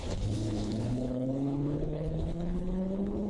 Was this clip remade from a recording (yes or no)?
yes